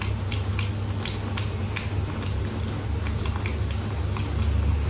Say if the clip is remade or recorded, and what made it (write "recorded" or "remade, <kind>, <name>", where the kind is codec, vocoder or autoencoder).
recorded